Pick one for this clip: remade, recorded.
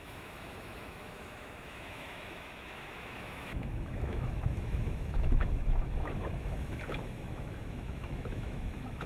remade